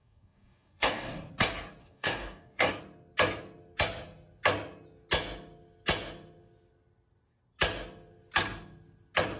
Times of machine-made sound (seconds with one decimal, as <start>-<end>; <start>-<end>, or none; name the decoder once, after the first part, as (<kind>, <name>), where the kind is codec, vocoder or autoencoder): 0.0-1.3 (codec, DAC); 1.8-2.7